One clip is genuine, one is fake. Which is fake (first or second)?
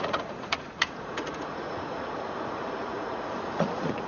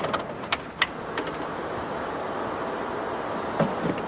first